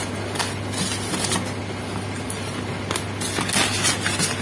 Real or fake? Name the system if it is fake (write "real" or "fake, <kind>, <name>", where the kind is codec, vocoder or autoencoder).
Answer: real